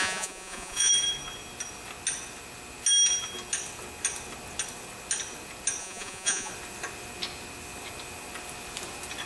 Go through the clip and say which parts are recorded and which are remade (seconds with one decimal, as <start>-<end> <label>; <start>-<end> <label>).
0.0-0.9 remade; 0.9-5.8 recorded; 5.8-6.5 remade; 6.5-9.3 recorded